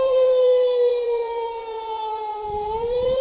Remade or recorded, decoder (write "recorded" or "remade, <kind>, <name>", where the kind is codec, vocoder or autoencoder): remade, vocoder, BigVGAN v2